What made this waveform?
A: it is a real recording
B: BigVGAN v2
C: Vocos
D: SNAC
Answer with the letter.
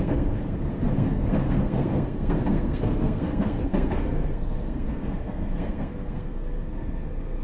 D